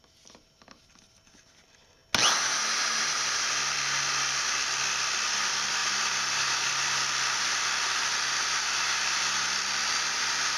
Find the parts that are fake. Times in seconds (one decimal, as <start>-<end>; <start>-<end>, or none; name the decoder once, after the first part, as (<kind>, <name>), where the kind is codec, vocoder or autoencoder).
none